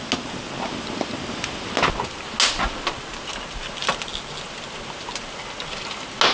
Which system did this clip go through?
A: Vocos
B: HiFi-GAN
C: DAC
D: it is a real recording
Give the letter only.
D